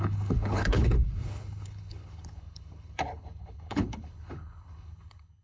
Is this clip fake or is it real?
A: fake